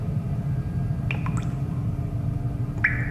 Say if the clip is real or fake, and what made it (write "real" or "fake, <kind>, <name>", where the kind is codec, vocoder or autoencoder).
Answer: real